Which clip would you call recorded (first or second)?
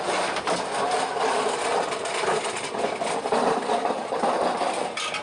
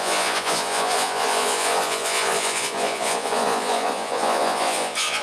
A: first